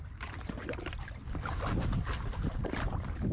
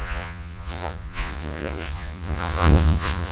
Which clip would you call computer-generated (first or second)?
second